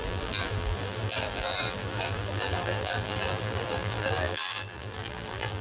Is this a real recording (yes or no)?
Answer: no